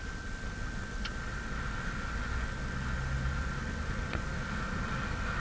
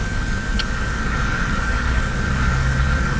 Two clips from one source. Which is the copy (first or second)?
second